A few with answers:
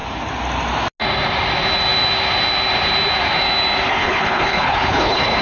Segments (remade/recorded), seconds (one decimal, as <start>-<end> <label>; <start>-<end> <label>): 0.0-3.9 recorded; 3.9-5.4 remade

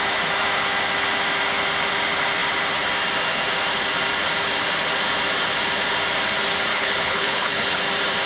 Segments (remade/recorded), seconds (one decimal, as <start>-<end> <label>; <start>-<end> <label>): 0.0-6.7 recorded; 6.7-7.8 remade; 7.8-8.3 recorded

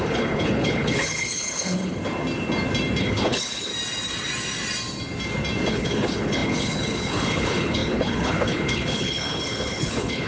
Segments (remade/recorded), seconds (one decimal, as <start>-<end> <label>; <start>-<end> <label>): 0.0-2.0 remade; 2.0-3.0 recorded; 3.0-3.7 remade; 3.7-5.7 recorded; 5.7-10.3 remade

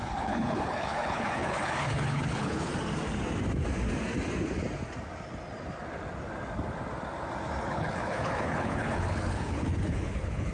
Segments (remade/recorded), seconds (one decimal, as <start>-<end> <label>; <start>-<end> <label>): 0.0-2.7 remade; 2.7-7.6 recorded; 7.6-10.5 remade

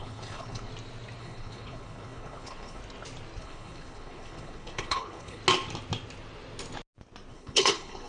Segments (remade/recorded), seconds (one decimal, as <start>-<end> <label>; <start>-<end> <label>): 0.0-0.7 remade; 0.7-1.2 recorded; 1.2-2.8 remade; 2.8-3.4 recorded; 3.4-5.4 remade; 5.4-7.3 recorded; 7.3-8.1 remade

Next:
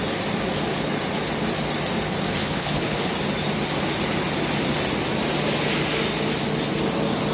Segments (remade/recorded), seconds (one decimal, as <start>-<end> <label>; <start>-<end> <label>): 0.0-2.4 recorded; 2.4-3.1 remade; 3.1-7.3 recorded

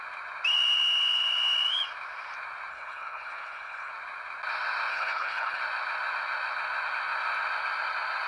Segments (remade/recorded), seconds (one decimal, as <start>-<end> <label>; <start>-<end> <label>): 0.0-2.7 recorded; 2.7-3.9 remade; 3.9-4.9 recorded; 4.9-5.6 remade; 5.6-8.3 recorded